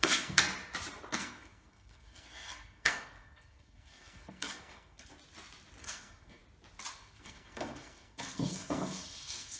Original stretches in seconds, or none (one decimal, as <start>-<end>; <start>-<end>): 0.5-1.1; 5.1-5.8; 6.4-6.9